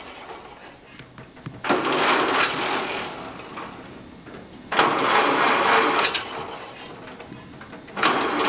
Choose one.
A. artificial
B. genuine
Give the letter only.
B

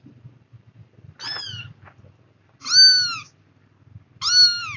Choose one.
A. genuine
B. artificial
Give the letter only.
A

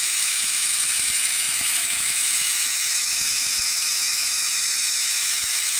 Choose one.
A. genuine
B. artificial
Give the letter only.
B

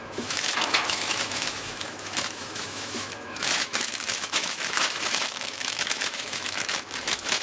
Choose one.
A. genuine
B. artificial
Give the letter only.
B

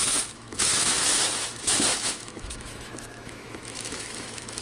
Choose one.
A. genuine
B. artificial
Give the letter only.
B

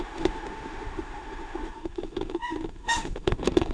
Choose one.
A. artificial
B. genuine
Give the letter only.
A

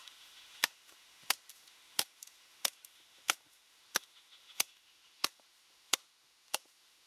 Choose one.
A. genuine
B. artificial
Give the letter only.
B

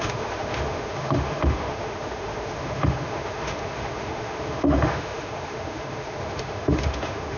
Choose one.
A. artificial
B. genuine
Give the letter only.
A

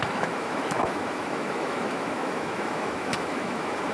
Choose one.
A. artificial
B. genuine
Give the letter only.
A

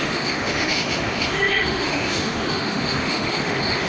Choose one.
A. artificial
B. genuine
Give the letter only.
A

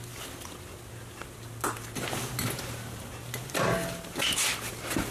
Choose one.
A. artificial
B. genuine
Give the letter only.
B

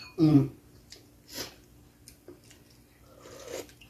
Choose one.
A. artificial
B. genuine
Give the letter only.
B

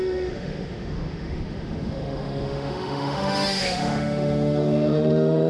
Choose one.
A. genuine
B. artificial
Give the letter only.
B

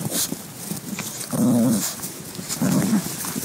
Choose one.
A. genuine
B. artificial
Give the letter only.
A